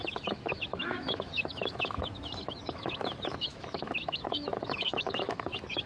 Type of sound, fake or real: fake